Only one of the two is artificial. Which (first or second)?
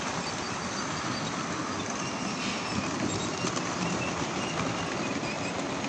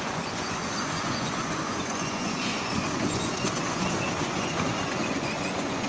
second